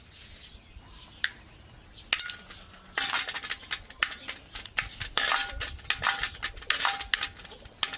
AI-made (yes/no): no